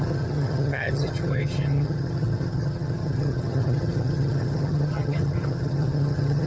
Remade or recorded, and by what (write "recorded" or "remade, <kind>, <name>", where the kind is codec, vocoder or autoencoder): remade, vocoder, HiFi-GAN